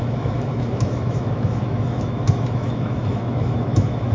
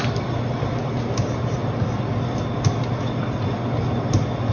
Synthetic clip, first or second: first